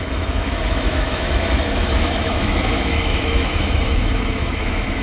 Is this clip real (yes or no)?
no